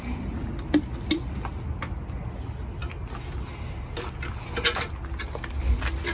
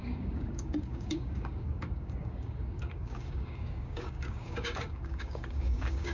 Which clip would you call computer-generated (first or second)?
second